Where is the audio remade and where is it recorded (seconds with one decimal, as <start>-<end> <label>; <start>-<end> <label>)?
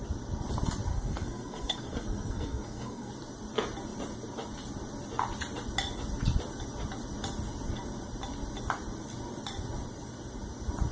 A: 0.0-0.9 recorded; 0.9-3.1 remade; 3.1-10.9 recorded